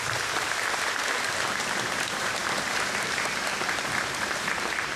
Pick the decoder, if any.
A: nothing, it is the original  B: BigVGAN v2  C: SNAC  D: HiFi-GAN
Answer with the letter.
B